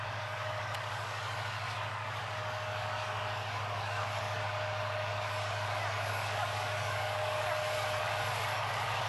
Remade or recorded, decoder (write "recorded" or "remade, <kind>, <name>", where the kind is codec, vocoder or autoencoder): remade, codec, DAC